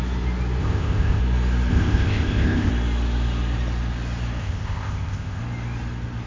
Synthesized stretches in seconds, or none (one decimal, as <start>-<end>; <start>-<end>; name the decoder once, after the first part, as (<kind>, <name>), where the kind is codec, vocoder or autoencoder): 0.6-1.2 (codec, ZipCodec); 1.7-2.7; 4.4-5.4